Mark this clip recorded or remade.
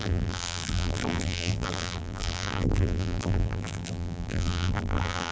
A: remade